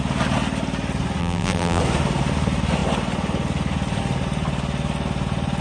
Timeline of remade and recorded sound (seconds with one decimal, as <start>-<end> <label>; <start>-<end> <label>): 0.0-1.2 recorded; 1.2-1.8 remade; 1.8-5.6 recorded